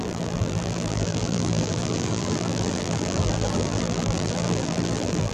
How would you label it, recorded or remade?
remade